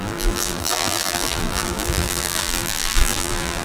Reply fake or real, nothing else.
fake